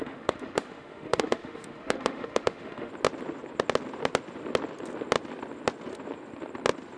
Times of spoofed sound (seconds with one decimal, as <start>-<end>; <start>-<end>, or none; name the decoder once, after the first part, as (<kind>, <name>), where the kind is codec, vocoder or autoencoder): 0.0-2.9 (autoencoder, DAC-VAE)